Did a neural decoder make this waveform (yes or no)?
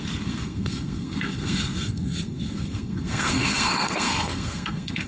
yes